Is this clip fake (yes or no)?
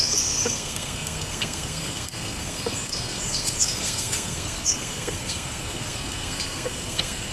yes